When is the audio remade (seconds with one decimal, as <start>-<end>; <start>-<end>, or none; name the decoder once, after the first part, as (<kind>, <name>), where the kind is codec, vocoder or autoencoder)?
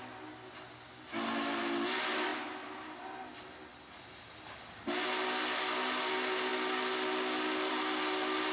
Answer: none